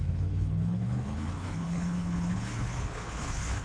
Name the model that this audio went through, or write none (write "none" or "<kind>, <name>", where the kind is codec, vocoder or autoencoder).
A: codec, HILCodec